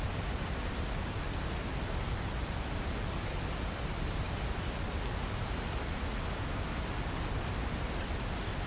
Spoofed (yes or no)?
no